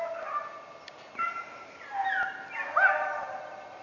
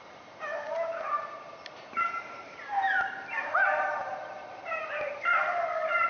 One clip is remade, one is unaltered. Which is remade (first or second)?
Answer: second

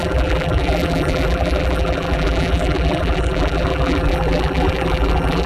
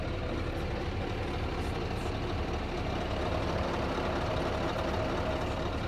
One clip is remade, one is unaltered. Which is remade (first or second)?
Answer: first